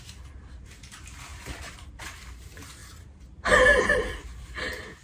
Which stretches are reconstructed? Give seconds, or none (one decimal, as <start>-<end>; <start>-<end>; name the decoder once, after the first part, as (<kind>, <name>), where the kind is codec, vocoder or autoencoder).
1.3-2.0 (vocoder, BigVGAN v2)